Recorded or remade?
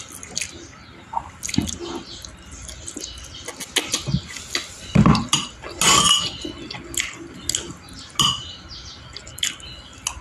recorded